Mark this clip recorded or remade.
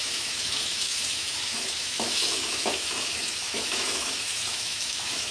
remade